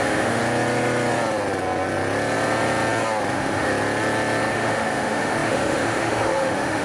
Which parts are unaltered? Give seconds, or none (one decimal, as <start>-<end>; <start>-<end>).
0.4-3.3; 3.7-4.5